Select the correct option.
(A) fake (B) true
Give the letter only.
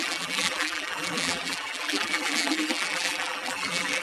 A